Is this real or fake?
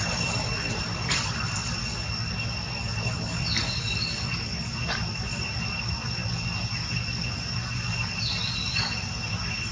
real